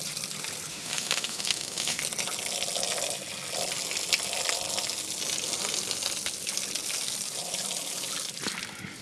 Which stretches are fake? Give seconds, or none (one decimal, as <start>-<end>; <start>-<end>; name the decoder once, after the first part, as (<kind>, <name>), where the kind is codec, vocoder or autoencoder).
0.7-2.0 (autoencoder, DAC-VAE)